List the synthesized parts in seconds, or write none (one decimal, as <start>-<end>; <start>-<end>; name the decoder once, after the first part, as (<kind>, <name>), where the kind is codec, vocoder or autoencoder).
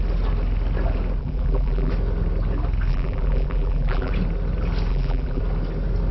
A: 1.2-1.9 (vocoder, BigVGAN v2); 2.9-4.1; 4.9-5.4